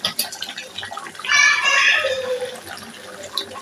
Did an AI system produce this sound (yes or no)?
no